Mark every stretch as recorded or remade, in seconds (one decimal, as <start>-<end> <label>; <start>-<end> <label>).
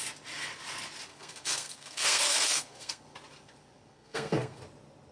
0.0-1.1 recorded; 1.1-3.0 remade; 3.0-3.9 recorded; 3.9-4.6 remade; 4.6-5.1 recorded